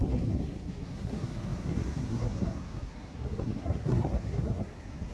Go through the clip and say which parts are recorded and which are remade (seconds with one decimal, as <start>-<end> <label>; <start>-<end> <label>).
0.0-5.1 remade